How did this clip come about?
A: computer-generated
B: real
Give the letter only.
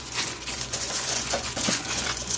A